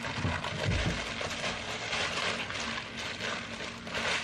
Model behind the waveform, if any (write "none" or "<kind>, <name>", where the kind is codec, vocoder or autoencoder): none